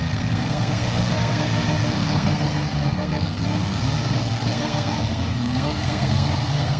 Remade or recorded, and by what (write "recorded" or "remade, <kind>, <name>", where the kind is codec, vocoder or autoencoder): remade, codec, SNAC